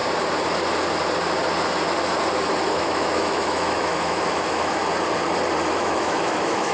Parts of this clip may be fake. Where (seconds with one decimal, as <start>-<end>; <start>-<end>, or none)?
2.7-4.8; 5.7-6.7